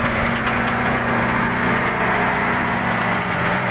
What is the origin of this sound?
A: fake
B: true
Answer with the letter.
A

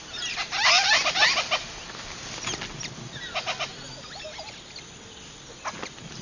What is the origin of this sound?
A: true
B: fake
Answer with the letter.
A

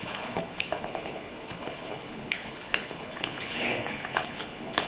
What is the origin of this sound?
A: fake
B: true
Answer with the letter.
A